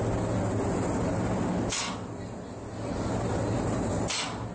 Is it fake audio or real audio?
real